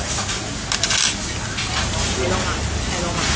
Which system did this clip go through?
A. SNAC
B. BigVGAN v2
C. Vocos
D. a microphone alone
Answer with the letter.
D